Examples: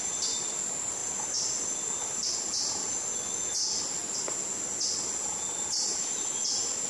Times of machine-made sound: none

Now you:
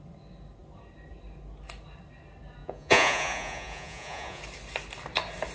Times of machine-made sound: 2.6-4.4 (vocoder, Vocos)

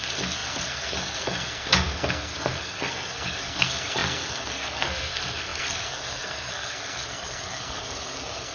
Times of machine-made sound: 0.0-8.5 (codec, SNAC)

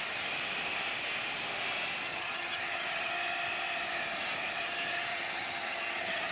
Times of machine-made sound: 2.1-3.1 (vocoder, HiFi-GAN); 5.1-6.3

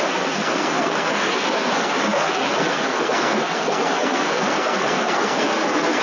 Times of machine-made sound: 0.0-6.0 (codec, SNAC)